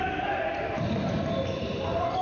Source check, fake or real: real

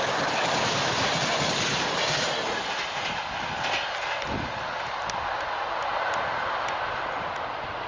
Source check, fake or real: real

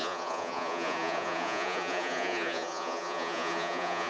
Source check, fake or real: fake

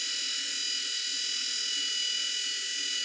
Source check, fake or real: real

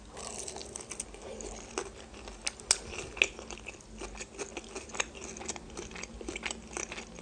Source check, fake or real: real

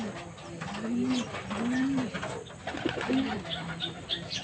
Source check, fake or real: real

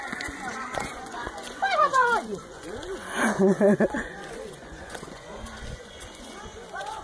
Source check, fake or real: fake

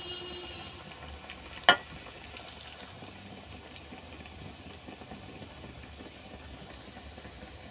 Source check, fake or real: real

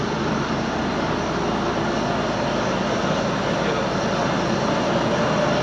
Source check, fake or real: real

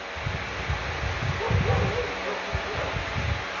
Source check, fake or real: real